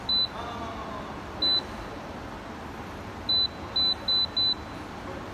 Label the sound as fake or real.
real